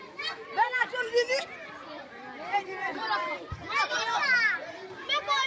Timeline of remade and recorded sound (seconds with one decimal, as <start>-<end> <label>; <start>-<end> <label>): 0.0-5.5 recorded